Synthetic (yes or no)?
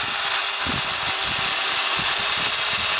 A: no